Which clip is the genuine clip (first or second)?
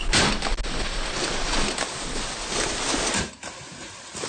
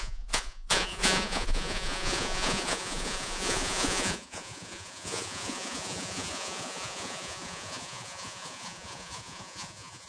first